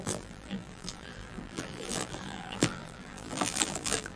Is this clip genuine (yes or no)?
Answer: no